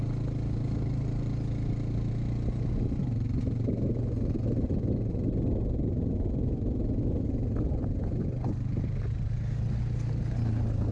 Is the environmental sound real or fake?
real